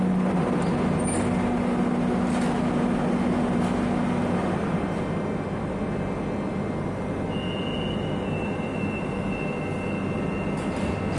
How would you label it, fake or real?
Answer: real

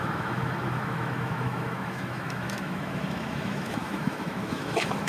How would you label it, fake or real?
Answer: fake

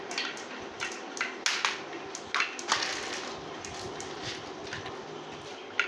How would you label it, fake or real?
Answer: real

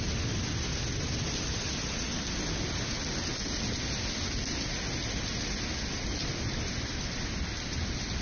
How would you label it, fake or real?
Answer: real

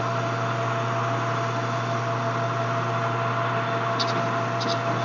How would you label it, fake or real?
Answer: real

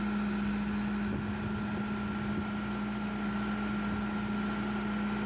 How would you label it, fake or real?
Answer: real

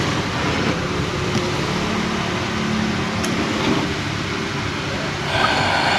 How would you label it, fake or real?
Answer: real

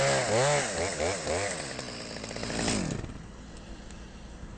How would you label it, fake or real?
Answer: real